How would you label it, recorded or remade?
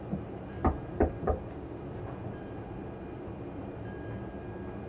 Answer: remade